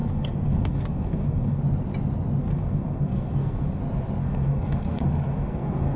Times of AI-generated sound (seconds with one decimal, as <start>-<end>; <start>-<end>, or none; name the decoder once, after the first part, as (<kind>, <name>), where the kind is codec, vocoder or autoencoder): 0.0-1.6 (codec, SNAC); 2.4-3.8; 4.2-6.0